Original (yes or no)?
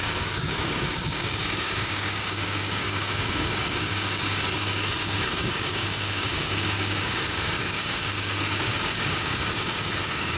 no